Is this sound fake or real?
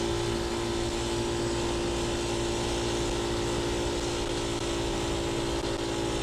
real